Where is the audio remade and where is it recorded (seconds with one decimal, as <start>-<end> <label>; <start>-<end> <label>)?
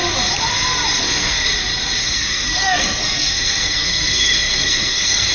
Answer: 0.0-1.0 recorded; 1.0-1.5 remade; 1.5-2.0 recorded; 2.0-5.3 remade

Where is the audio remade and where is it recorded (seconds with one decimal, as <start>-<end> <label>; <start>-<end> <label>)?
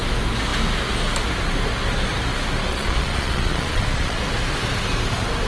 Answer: 0.0-2.7 recorded; 2.7-4.2 remade; 4.2-5.5 recorded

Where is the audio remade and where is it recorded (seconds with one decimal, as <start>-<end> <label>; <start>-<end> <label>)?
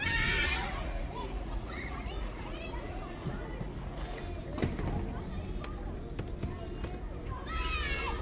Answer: 0.0-0.4 recorded; 0.4-4.2 remade; 4.2-8.2 recorded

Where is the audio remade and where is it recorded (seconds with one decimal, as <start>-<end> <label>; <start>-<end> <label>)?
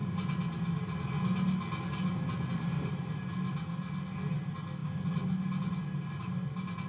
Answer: 0.0-6.9 recorded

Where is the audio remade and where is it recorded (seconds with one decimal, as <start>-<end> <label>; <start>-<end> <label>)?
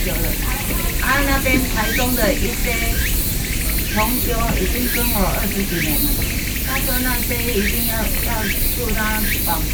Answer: 0.0-2.6 recorded; 2.6-3.4 remade; 3.4-9.7 recorded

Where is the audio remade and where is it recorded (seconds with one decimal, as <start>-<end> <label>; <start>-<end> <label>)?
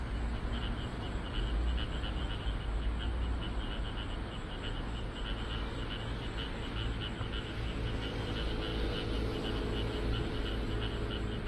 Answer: 0.0-11.5 recorded